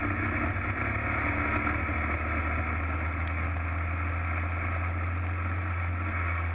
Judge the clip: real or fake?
real